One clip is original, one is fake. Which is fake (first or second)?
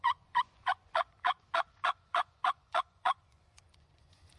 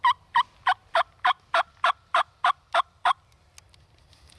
first